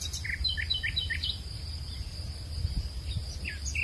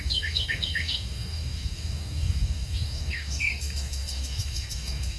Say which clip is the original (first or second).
first